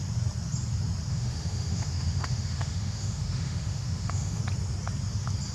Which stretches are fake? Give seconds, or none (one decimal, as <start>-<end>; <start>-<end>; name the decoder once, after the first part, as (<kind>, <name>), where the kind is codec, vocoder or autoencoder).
1.1-4.4 (autoencoder, DAC-VAE)